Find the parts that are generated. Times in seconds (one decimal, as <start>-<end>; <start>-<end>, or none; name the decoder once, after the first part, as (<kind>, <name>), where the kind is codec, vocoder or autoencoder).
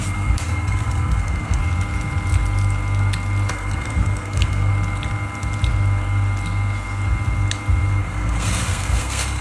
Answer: 0.0-1.6 (codec, SNAC); 3.5-4.7; 8.0-9.4